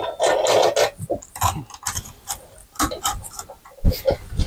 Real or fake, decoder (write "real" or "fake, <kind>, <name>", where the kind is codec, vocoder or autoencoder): real